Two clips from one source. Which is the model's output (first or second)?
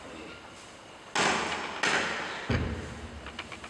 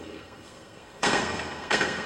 second